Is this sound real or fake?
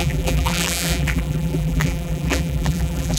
fake